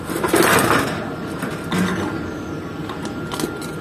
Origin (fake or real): real